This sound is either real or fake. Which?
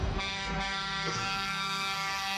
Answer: fake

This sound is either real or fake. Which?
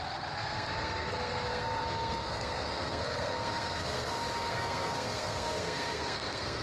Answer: fake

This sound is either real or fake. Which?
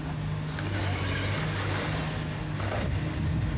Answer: real